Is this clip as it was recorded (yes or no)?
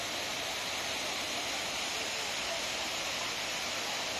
yes